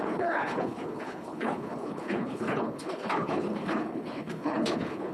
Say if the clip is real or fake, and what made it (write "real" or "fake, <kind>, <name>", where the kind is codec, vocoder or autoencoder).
fake, codec, HILCodec